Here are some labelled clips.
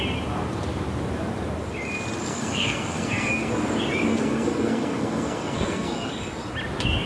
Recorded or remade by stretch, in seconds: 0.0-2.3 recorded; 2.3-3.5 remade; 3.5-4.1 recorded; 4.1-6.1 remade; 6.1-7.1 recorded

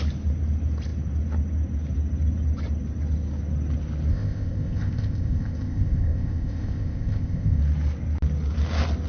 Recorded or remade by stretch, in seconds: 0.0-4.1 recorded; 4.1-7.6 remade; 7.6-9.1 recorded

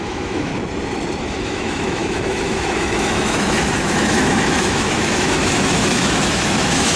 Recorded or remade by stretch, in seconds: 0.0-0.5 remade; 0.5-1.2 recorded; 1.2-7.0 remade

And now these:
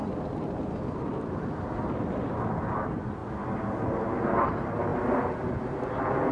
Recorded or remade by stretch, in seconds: 0.0-6.3 recorded